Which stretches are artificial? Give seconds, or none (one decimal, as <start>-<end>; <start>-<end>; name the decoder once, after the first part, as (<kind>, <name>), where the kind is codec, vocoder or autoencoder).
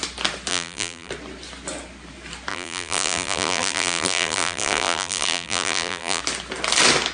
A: 0.5-1.1 (vocoder, BigVGAN v2); 2.5-6.2